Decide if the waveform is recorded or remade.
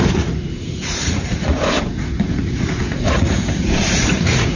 remade